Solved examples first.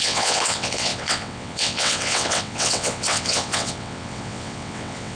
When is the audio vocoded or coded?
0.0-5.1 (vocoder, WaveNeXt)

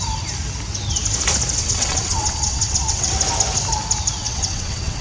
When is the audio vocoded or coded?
1.6-3.2 (vocoder, WaveNeXt); 4.2-5.0

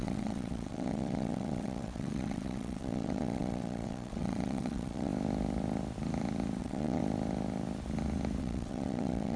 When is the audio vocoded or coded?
0.0-5.1 (vocoder, WaveNeXt); 6.6-7.0; 8.4-9.4

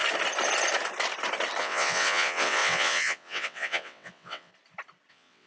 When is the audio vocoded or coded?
1.6-4.5 (vocoder, WaveNeXt); 5.1-5.5